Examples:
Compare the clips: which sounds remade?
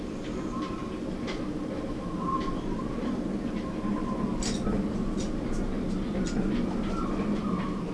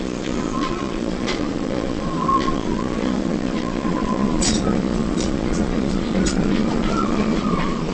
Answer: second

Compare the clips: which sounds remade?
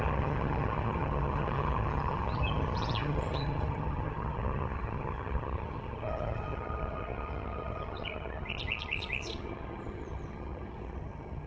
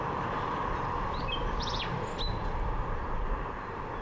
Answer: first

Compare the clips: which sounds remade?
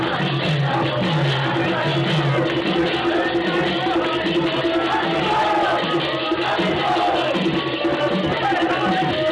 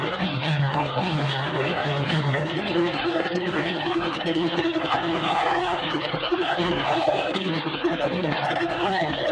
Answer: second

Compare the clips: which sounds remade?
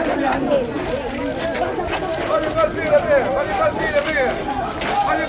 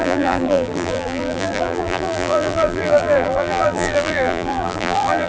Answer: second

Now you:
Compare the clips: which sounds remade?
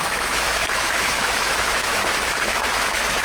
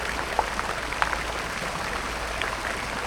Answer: first